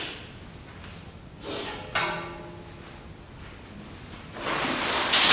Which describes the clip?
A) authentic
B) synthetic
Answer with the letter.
A